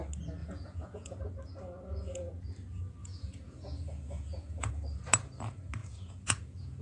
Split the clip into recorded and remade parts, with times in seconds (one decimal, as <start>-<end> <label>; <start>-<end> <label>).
0.0-0.4 recorded; 0.4-1.2 remade; 1.2-3.0 recorded; 3.0-4.7 remade; 4.7-5.8 recorded; 5.8-6.8 remade

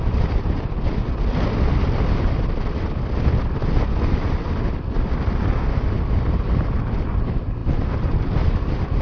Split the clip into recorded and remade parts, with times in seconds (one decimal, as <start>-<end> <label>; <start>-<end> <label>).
0.0-9.0 recorded

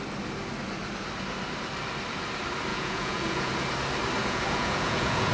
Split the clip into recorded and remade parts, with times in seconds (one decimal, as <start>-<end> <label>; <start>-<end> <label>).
0.0-2.7 recorded; 2.7-3.5 remade; 3.5-4.2 recorded; 4.2-5.3 remade

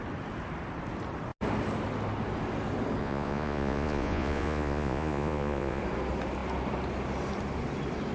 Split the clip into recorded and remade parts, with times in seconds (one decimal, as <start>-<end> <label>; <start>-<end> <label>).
0.0-3.0 recorded; 3.0-5.8 remade; 5.8-8.1 recorded

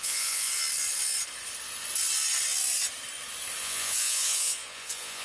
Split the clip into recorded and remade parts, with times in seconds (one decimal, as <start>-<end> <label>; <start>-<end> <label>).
0.0-0.5 remade; 0.5-3.6 recorded; 3.6-5.2 remade

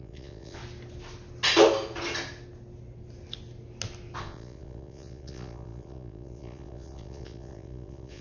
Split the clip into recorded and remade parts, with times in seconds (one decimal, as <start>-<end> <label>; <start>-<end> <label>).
0.0-0.6 remade; 0.6-4.2 recorded; 4.2-8.2 remade

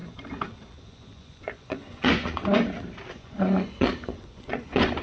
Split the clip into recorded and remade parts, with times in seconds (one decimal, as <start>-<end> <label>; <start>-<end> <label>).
0.0-0.8 recorded; 0.8-2.4 remade; 2.4-3.1 recorded; 3.1-5.0 remade

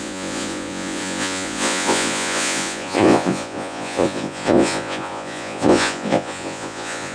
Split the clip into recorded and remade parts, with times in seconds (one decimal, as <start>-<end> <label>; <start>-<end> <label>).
0.0-7.1 remade